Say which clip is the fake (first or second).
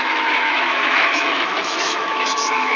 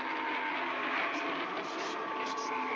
first